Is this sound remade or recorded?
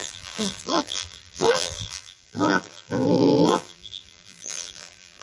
remade